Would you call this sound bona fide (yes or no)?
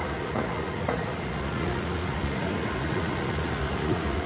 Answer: no